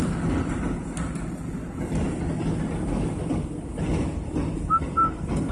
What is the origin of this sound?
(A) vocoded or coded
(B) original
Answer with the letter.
B